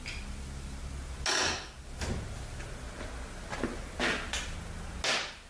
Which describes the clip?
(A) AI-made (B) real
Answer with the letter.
B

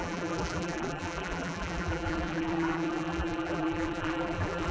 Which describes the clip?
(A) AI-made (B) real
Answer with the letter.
A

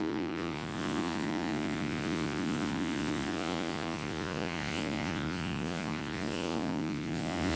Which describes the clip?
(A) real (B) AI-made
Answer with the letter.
B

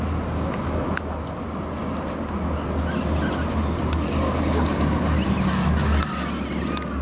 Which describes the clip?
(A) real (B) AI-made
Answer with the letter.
A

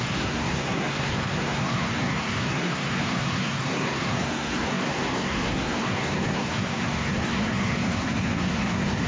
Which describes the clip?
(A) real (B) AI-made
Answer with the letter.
B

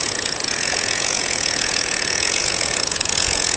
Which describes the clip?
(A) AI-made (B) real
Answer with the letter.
A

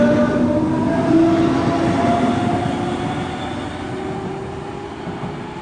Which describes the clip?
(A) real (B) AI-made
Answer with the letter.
A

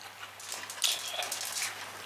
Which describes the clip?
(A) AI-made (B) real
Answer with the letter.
B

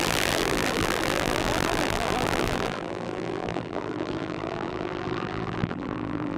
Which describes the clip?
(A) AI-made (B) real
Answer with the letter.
A